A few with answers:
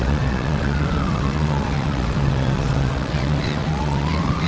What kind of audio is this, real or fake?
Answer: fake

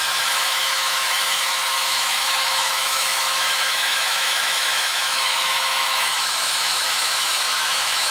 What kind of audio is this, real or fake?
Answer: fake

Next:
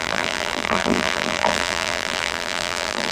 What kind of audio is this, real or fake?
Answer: fake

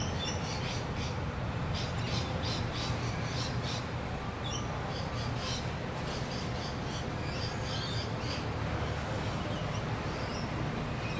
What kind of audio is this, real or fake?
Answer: real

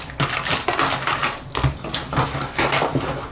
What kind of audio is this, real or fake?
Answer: real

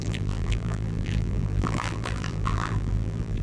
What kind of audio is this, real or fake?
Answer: fake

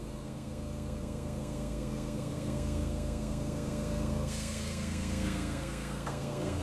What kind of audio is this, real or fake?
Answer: fake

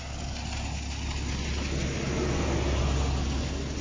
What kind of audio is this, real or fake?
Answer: real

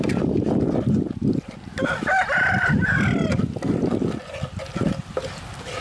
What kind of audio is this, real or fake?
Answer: real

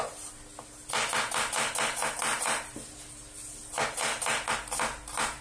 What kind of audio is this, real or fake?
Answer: real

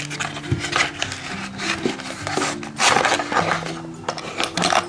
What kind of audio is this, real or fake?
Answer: real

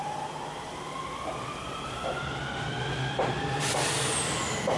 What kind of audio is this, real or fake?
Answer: real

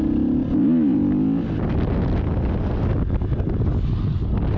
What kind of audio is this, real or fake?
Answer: real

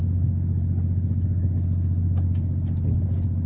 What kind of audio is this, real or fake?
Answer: real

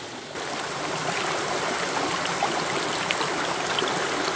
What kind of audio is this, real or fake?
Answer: real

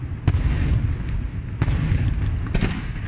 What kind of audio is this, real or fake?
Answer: real